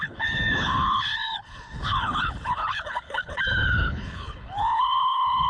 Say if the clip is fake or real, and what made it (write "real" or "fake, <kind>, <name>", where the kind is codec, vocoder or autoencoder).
fake, codec, HILCodec